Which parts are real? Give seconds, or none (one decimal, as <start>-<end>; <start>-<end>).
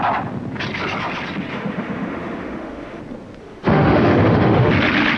0.0-1.5; 3.0-3.4; 4.7-5.2